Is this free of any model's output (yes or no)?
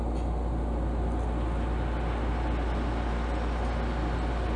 yes